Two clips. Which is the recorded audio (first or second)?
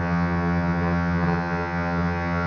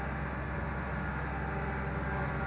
second